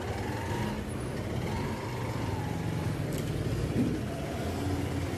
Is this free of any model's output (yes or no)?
yes